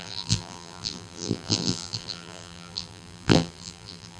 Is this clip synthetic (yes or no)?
yes